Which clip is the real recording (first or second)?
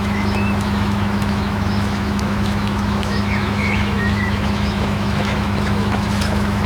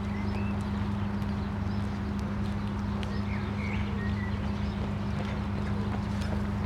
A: second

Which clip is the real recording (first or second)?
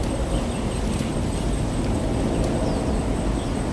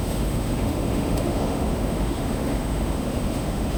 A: first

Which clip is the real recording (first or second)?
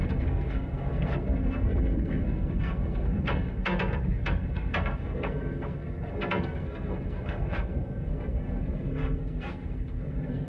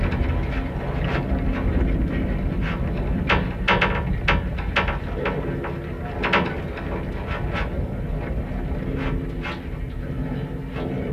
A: second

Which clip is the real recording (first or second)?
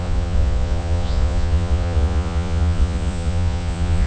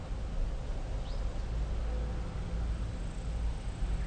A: second